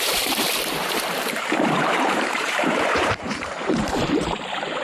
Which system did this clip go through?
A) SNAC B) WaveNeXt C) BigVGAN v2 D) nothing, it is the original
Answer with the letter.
C